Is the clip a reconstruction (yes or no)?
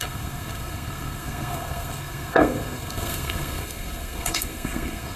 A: yes